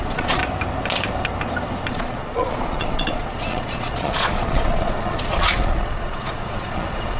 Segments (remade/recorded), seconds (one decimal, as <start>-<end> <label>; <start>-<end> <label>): 0.0-0.4 remade; 0.4-1.9 recorded; 1.9-7.2 remade

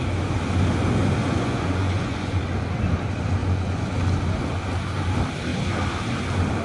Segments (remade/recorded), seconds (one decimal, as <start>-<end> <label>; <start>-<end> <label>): 0.0-1.2 recorded; 1.2-2.4 remade; 2.4-3.4 recorded; 3.4-3.9 remade; 3.9-6.6 recorded

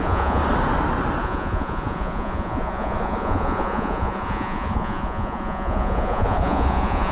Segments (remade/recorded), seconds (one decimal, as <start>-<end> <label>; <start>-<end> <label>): 0.0-0.4 remade; 0.4-1.2 recorded; 1.2-7.1 remade

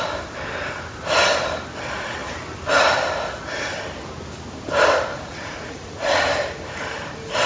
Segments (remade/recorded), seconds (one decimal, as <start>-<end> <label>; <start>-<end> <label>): 0.0-5.1 recorded; 5.1-6.2 remade; 6.2-7.5 recorded

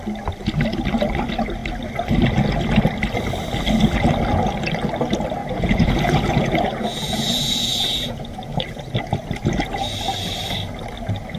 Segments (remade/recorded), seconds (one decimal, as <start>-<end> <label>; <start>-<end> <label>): 0.0-5.4 recorded; 5.4-8.8 remade; 8.8-11.4 recorded

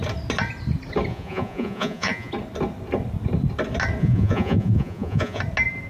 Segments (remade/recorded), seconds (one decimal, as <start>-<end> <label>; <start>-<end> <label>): 0.0-1.1 recorded; 1.1-2.3 remade; 2.3-4.0 recorded; 4.0-5.4 remade; 5.4-5.9 recorded

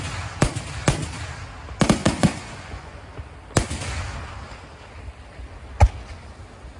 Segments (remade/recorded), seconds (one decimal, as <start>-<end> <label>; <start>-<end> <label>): 0.0-2.0 recorded; 2.0-3.0 remade; 3.0-6.8 recorded